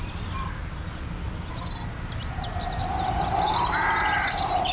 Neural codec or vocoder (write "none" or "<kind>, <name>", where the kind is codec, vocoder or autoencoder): none